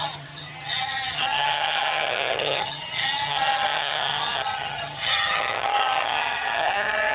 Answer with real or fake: fake